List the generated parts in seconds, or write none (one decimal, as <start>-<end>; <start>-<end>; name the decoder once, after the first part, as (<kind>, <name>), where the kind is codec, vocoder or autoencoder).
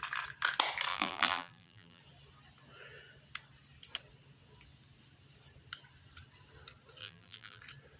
0.9-2.0 (vocoder, BigVGAN v2); 7.0-7.6